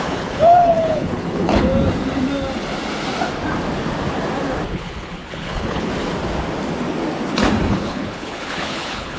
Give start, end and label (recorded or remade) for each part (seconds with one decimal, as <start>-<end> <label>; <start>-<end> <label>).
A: 0.0-1.7 remade; 1.7-4.7 recorded; 4.7-5.9 remade; 5.9-7.7 recorded; 7.7-9.2 remade